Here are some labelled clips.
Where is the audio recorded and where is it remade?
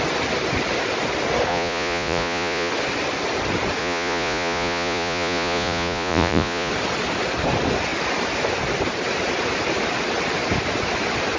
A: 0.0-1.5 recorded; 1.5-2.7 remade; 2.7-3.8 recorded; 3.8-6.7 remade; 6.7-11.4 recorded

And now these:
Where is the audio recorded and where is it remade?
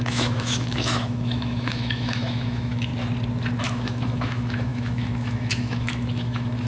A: 0.0-2.9 remade; 2.9-3.6 recorded; 3.6-6.7 remade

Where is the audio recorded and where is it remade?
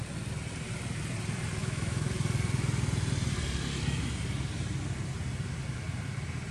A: 0.0-1.6 recorded; 1.6-2.1 remade; 2.1-6.5 recorded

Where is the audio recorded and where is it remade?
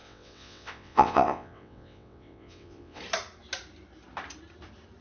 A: 0.0-3.0 remade; 3.0-5.0 recorded